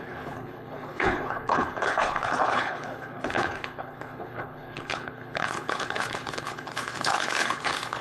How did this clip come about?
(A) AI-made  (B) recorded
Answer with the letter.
A